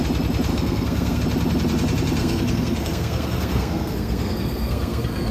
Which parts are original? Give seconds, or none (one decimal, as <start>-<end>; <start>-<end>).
0.0-0.5; 1.2-2.2